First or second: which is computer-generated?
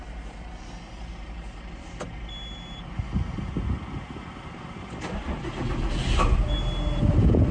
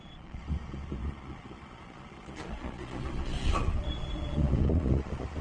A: second